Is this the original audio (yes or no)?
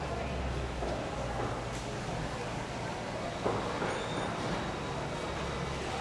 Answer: yes